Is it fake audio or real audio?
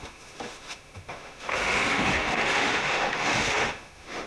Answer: fake